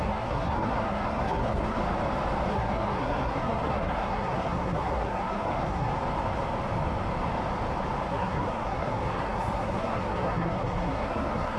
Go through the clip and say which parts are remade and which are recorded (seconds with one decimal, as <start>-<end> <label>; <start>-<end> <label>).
0.0-1.8 remade; 1.8-2.5 recorded; 2.5-5.9 remade; 5.9-8.1 recorded; 8.1-11.6 remade